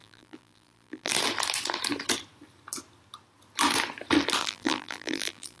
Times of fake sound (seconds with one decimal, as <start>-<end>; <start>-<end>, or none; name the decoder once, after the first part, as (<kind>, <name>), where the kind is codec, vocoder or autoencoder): 0.0-1.1 (vocoder, BigVGAN v2); 4.4-5.6